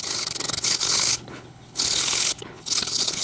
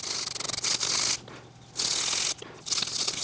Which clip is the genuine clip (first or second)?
second